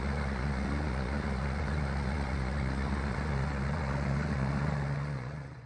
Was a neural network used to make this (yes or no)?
yes